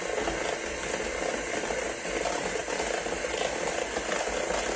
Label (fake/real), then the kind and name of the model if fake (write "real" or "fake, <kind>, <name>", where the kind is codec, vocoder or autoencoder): real